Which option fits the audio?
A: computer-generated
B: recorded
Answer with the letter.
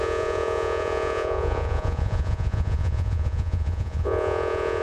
A